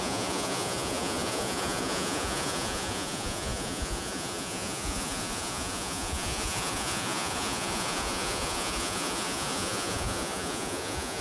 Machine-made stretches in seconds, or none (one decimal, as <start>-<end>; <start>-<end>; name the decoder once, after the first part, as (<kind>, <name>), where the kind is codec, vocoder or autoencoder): 0.0-11.2 (vocoder, Vocos)